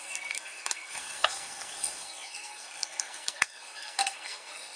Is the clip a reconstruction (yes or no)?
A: yes